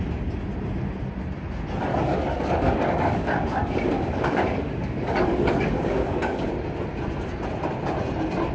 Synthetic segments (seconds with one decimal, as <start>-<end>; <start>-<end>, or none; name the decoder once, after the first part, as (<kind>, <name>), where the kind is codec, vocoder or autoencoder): 1.9-6.5 (codec, DAC)